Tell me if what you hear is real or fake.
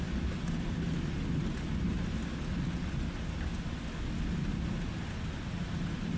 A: real